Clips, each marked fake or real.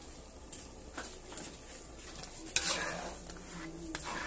real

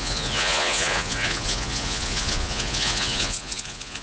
fake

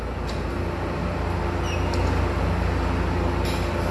real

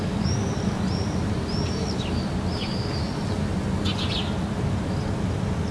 real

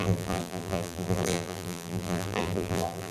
fake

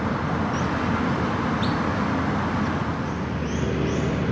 real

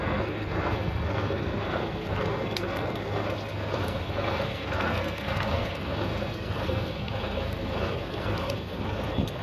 fake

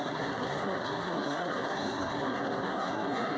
fake